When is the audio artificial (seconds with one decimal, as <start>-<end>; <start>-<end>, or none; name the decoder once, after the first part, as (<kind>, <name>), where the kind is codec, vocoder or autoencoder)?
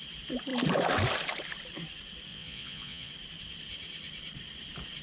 2.3-3.1 (vocoder, Vocos)